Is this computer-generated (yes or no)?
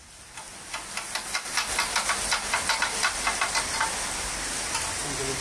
no